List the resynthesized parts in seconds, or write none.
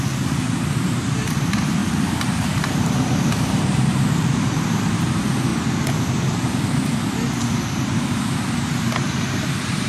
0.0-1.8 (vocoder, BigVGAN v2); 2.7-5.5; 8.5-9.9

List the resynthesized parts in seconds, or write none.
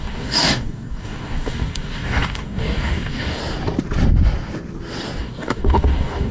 0.0-3.4 (codec, DAC); 5.2-6.3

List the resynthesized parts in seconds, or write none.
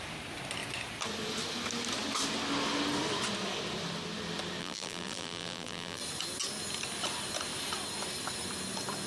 4.6-6.0 (vocoder, BigVGAN v2)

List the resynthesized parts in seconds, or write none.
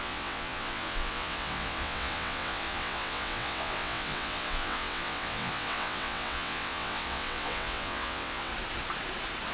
0.0-8.5 (vocoder, WaveNeXt)